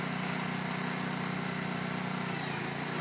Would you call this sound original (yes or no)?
yes